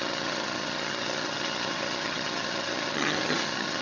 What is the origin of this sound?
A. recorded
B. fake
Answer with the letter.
B